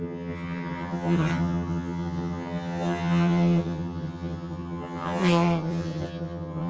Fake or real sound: fake